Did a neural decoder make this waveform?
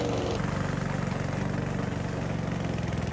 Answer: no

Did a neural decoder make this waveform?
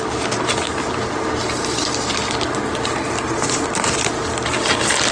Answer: no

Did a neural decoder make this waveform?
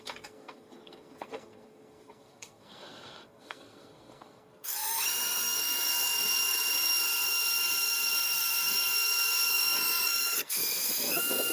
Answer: yes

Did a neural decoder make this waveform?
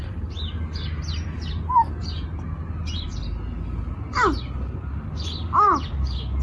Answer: no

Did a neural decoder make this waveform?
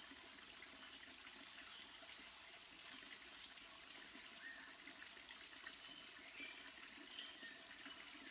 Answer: no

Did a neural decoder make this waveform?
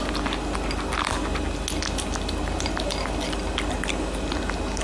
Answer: no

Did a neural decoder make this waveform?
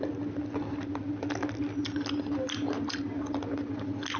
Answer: no